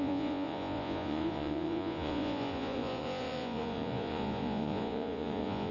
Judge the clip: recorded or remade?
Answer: remade